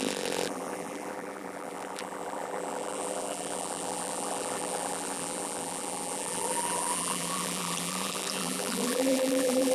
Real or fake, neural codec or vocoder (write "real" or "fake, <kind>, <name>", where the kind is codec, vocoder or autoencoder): fake, vocoder, BigVGAN v2